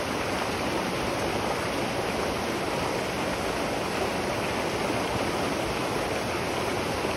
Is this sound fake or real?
real